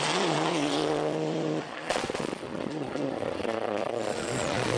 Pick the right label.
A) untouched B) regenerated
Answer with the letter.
B